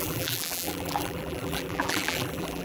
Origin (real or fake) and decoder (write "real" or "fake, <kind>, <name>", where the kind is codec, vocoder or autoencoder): fake, vocoder, BigVGAN v2